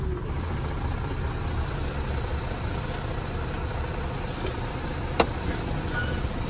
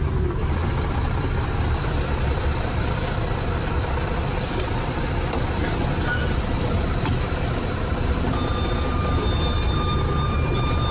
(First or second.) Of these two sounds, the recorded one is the first